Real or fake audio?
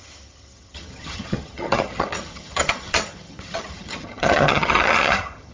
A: fake